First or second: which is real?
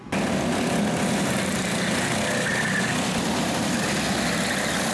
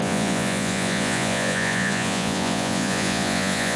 first